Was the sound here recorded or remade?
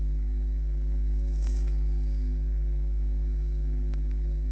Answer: remade